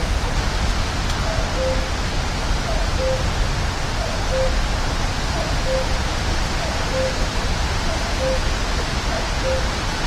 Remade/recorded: recorded